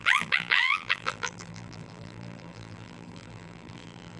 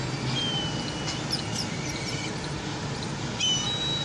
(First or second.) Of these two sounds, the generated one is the first